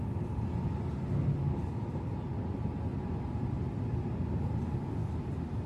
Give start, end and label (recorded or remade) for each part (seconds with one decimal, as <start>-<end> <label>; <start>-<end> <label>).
0.0-5.7 recorded